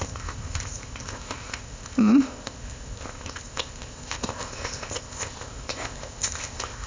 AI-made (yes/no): yes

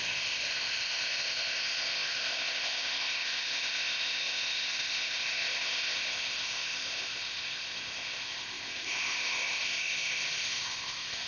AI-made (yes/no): yes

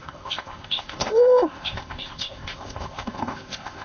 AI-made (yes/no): yes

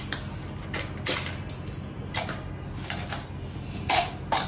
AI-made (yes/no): no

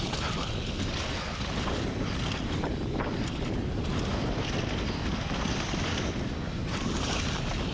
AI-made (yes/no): no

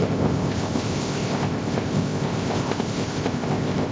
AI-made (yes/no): yes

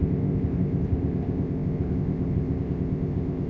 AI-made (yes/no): yes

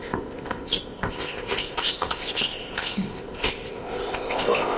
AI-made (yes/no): yes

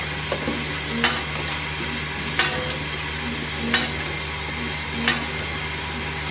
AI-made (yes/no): no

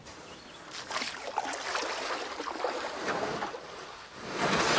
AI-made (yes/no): no